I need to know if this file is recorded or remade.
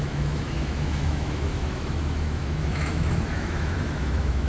remade